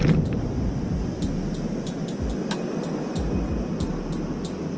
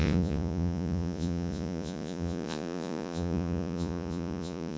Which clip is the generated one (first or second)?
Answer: second